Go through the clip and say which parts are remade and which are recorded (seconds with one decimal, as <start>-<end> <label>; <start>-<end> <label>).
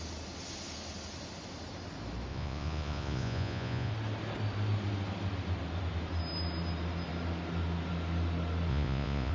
0.0-2.3 recorded; 2.3-3.9 remade; 3.9-8.7 recorded; 8.7-9.3 remade